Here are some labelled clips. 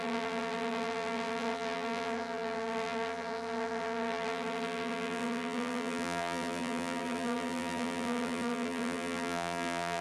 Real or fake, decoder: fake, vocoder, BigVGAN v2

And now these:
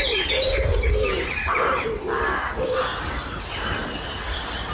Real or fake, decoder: real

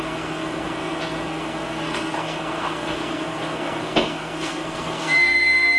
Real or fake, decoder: fake, codec, SNAC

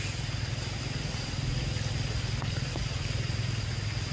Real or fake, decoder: real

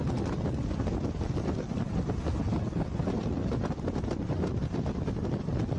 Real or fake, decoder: real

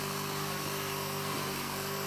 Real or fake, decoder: fake, codec, SNAC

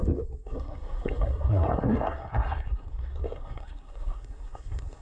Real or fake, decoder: fake, codec, SNAC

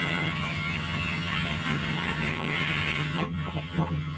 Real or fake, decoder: fake, vocoder, HiFi-GAN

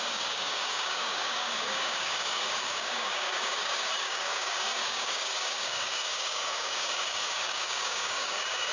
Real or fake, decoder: fake, codec, DAC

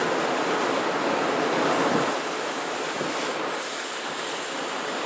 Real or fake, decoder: real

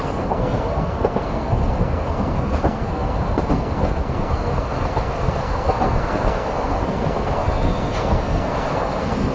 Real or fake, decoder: fake, codec, SNAC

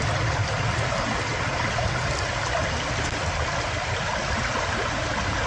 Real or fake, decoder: real